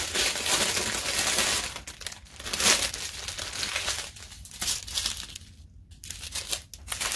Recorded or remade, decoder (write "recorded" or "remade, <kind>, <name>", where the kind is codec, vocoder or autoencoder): recorded